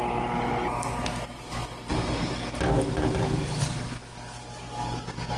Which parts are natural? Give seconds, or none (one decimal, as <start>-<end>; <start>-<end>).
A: 0.0-5.4